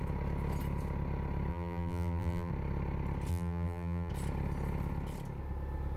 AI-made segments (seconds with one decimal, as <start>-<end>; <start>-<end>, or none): 1.5-2.5; 3.3-4.1